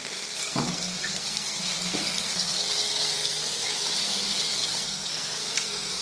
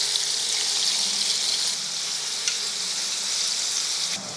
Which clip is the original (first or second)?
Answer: second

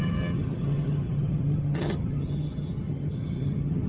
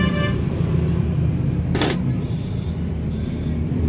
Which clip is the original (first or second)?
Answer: second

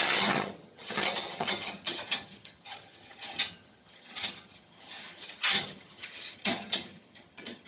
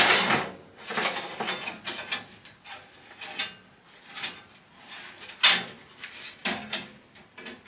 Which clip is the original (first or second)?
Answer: second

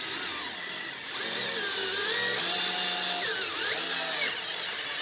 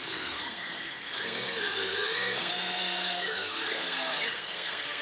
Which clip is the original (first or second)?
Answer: first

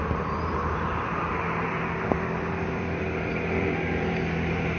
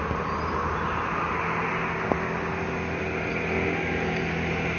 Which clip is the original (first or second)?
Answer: second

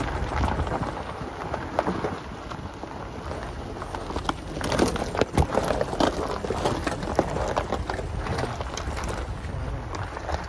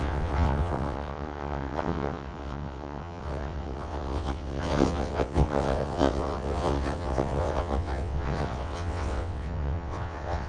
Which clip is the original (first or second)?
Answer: first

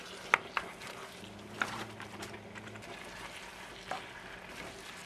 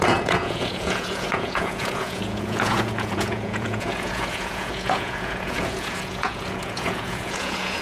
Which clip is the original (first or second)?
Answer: first